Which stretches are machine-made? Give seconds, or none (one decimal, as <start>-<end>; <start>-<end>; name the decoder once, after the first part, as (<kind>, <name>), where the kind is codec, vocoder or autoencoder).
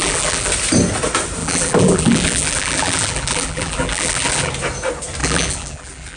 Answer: 0.0-0.5 (vocoder, BigVGAN v2); 1.4-4.5; 5.2-6.2